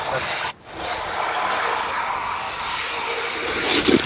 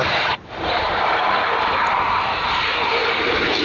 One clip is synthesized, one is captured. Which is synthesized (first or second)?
second